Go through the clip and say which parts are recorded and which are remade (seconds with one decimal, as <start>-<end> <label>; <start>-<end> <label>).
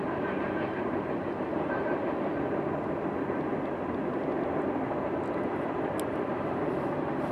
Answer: 0.0-1.9 remade; 1.9-6.3 recorded; 6.3-7.3 remade